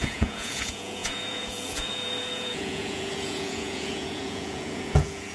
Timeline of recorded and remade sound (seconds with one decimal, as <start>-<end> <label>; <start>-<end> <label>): 0.0-5.3 remade